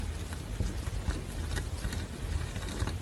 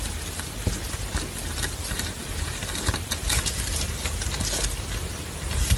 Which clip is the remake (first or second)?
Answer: second